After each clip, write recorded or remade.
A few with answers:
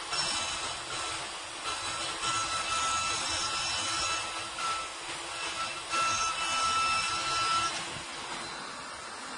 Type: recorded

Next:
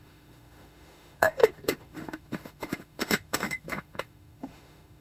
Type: remade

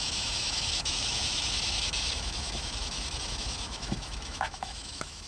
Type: remade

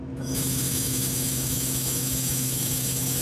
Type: remade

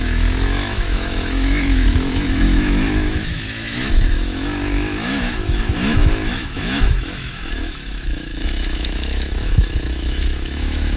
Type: remade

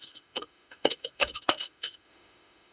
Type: remade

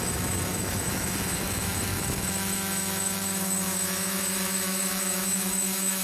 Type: remade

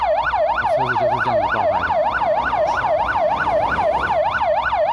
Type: recorded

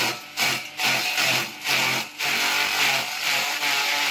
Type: recorded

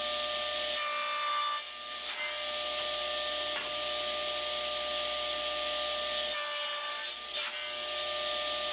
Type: recorded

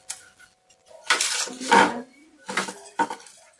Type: recorded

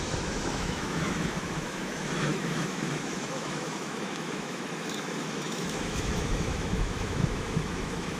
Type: remade